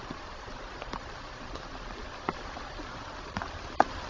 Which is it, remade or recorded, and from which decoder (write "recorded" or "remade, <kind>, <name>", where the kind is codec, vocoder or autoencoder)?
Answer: recorded